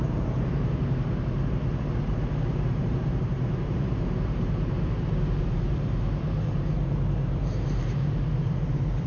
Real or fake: fake